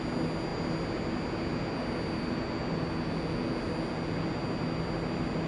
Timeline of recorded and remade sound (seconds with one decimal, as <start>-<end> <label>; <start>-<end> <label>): 0.0-5.5 recorded